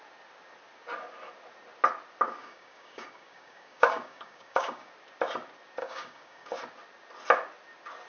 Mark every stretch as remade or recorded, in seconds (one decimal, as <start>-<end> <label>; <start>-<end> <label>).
0.0-2.4 recorded; 2.4-4.9 remade; 4.9-5.8 recorded; 5.8-6.5 remade; 6.5-8.1 recorded